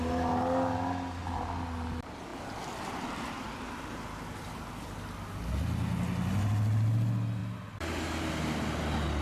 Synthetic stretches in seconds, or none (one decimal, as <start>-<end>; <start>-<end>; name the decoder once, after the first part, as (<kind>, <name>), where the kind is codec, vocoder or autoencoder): none